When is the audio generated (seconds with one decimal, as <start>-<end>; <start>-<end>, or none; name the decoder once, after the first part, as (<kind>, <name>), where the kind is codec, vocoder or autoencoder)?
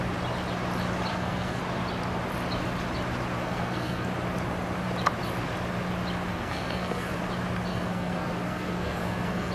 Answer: 1.1-1.6 (codec, SNAC); 3.4-4.1; 6.3-7.2; 7.7-9.5